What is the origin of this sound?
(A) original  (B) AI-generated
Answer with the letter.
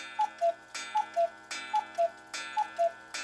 A